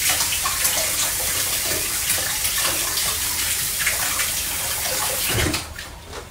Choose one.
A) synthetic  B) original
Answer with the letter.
B